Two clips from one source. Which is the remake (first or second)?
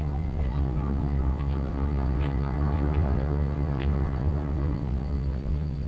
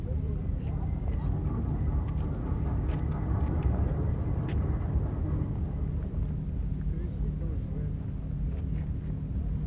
first